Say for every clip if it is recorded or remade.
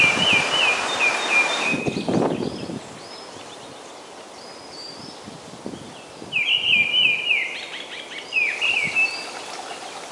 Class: recorded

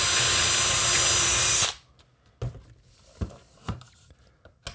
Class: recorded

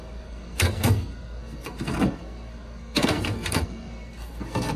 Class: remade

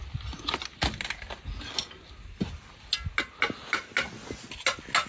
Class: recorded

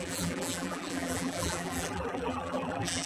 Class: remade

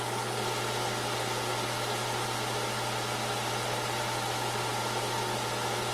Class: recorded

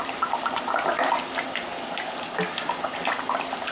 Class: recorded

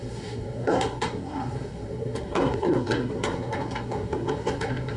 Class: remade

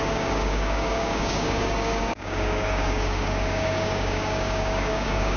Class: remade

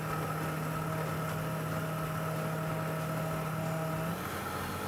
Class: recorded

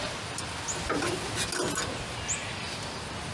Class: recorded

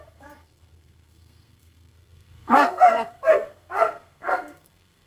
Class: remade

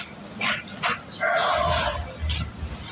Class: recorded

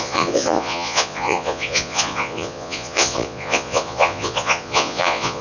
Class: remade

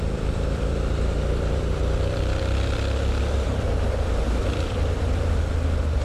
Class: remade